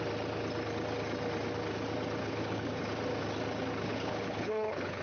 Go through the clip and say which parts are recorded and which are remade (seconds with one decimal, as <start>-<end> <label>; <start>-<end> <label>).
0.0-2.2 recorded; 2.2-2.8 remade; 2.8-3.9 recorded; 3.9-5.0 remade